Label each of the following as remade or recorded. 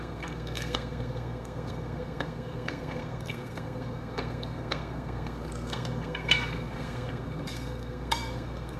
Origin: remade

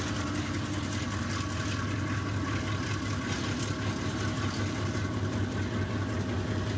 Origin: recorded